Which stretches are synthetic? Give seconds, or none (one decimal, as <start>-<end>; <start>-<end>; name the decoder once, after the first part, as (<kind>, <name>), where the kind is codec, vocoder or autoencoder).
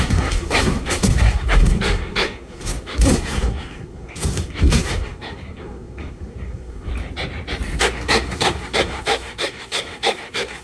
0.0-6.9 (codec, SNAC); 7.8-10.6